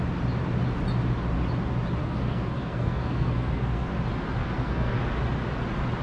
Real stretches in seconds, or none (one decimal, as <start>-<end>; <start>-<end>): 0.0-2.0; 3.9-4.4; 5.0-6.0